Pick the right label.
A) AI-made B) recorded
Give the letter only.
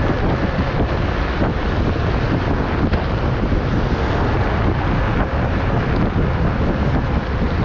B